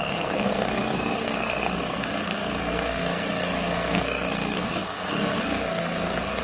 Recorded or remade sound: remade